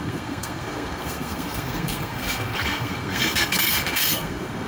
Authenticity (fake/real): fake